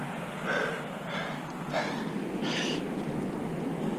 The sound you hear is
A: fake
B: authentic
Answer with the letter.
B